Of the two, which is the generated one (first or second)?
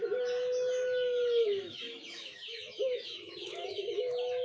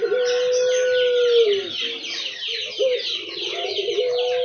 first